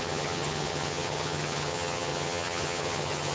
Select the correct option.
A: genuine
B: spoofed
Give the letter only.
B